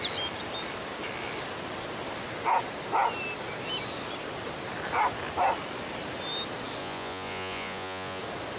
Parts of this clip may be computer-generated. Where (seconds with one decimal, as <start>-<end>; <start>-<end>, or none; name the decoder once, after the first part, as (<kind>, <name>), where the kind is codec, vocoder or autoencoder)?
6.8-8.2 (vocoder, Vocos)